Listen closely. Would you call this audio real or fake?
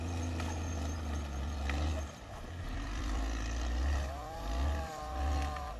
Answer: real